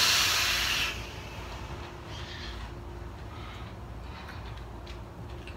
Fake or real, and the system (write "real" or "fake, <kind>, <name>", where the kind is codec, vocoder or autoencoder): real